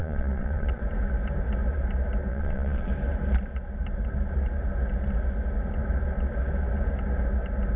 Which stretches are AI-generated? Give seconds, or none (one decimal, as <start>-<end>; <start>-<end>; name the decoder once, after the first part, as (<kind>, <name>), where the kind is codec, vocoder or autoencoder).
0.0-0.8 (vocoder, WaveNeXt); 2.3-2.9